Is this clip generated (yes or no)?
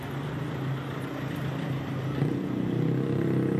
no